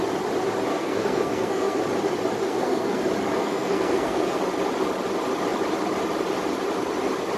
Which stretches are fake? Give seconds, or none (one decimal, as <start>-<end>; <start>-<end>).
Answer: 0.7-1.8; 2.4-3.0; 3.4-4.4